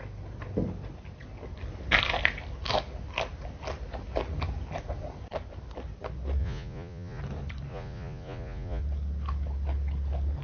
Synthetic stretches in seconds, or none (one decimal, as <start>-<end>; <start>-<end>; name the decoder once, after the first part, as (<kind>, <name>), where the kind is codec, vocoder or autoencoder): 6.4-7.2 (vocoder, Vocos); 7.7-8.8